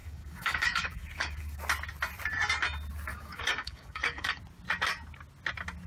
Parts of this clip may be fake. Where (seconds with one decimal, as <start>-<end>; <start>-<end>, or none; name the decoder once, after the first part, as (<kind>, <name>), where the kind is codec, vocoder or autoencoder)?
0.0-1.6 (codec, DAC); 3.1-4.4